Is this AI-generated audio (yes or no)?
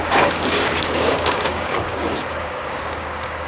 yes